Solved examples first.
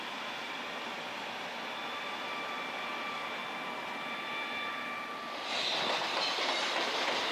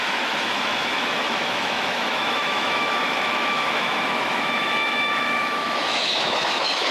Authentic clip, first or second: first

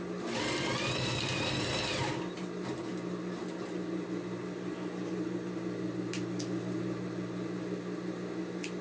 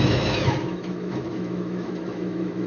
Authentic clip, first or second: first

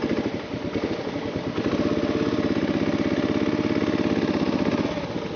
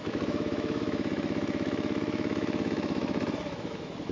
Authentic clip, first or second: first